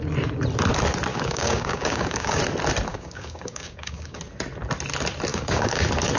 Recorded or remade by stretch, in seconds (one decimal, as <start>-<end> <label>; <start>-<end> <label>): 0.0-1.1 recorded; 1.1-2.4 remade; 2.4-2.9 recorded; 2.9-4.2 remade; 4.2-5.3 recorded; 5.3-5.8 remade; 5.8-6.2 recorded